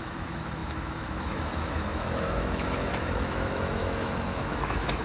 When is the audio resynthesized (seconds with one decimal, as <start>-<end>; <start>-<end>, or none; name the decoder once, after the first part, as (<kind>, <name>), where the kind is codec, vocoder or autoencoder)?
0.0-5.0 (autoencoder, DAC-VAE)